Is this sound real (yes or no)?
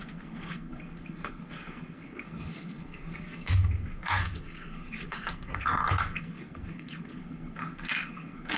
no